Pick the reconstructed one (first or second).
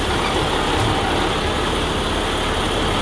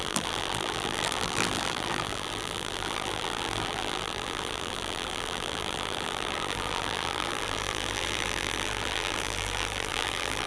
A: second